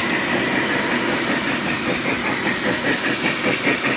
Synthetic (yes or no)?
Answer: no